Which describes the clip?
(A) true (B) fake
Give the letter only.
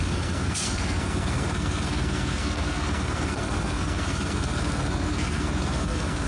B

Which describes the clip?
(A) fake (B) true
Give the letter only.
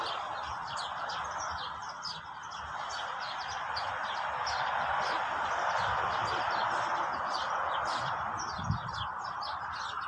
B